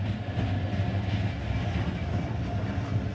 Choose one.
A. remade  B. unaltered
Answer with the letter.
B